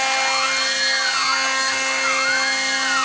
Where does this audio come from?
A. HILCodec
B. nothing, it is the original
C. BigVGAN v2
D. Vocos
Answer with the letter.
B